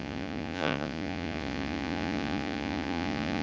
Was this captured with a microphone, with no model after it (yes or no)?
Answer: no